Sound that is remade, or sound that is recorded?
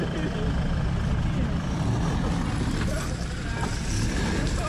recorded